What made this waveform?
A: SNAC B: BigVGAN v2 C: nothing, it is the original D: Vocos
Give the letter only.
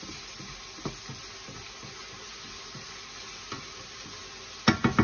C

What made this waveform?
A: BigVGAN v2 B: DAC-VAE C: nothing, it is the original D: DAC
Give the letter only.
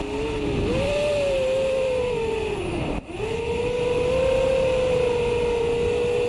C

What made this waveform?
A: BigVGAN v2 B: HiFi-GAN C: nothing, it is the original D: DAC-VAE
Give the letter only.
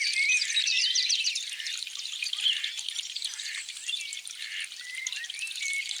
A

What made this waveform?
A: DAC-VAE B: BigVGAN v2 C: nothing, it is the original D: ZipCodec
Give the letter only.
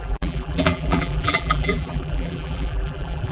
B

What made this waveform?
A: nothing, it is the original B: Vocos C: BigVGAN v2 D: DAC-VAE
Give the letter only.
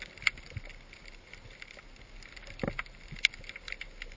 A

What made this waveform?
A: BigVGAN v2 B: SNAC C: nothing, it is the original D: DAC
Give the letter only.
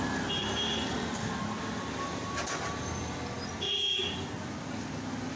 C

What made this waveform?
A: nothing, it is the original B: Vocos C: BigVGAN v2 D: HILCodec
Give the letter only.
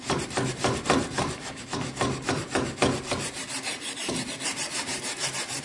C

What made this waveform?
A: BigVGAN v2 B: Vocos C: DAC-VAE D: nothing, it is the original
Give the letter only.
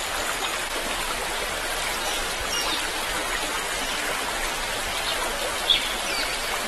D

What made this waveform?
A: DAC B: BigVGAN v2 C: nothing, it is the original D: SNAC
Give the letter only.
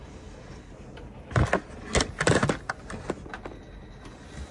C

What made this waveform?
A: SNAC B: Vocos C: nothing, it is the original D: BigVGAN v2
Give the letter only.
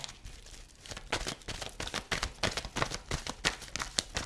C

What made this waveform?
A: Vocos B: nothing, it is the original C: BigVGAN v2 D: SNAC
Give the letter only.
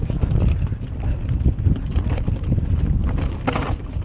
B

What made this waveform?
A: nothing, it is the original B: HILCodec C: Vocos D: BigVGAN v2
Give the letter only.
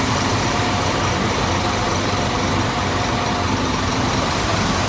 D